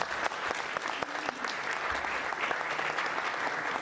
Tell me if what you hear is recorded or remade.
recorded